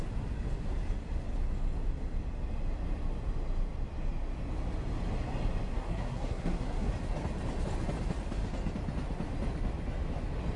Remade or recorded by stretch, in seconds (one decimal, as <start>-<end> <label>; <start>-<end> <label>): 0.0-5.7 recorded; 5.7-6.9 remade; 6.9-10.6 recorded